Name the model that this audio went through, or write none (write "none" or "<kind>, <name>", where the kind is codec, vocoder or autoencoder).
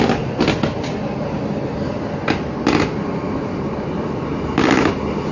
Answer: none